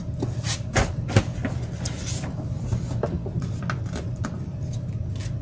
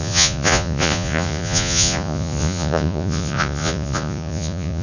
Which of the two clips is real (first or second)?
first